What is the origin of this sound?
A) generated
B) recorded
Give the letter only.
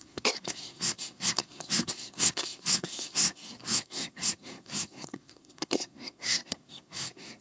A